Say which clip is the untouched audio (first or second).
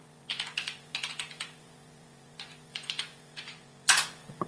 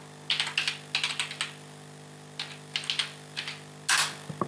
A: second